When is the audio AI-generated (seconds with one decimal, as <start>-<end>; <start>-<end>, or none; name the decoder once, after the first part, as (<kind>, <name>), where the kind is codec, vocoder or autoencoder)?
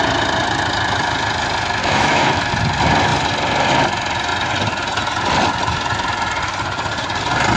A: 1.8-2.5 (autoencoder, DAC-VAE)